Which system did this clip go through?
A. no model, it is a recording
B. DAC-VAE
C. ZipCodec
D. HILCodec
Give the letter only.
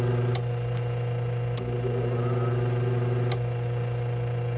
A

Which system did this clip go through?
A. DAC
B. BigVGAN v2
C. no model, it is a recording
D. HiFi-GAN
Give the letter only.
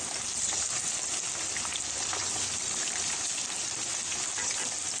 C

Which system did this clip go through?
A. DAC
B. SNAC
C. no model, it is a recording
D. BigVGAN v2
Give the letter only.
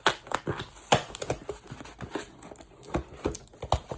C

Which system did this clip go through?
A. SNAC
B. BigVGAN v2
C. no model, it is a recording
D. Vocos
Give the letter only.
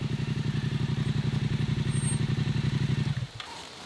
C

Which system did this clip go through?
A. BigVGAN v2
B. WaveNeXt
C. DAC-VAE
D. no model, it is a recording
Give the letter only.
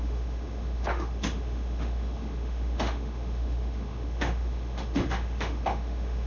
C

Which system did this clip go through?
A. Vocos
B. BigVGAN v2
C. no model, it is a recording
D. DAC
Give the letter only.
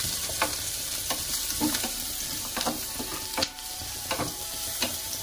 B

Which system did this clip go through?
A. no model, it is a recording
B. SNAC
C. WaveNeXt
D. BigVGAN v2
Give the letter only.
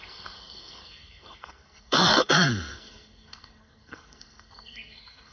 B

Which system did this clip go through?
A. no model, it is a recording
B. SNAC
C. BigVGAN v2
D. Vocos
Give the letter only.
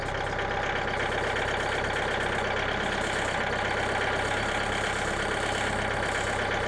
A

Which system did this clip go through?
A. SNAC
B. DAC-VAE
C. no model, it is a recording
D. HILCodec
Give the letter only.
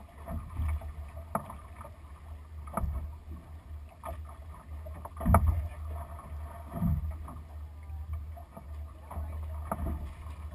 C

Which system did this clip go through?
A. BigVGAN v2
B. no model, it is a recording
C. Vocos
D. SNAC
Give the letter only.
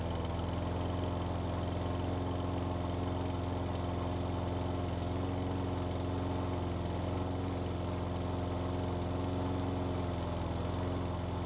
B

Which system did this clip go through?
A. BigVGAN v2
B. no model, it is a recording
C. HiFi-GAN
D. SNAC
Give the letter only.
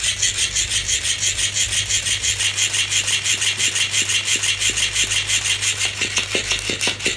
B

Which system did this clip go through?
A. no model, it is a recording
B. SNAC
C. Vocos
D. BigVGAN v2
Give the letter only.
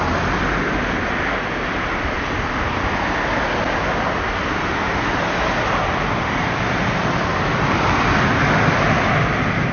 A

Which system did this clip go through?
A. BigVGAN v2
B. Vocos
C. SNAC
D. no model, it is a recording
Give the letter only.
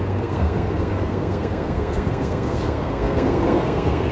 C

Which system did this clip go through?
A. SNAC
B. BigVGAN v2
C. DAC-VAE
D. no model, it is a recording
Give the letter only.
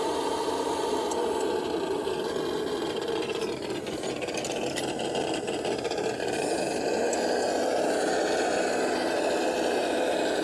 D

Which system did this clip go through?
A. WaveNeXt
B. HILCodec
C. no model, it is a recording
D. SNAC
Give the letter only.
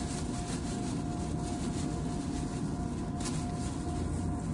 C